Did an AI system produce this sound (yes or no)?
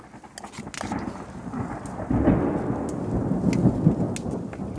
no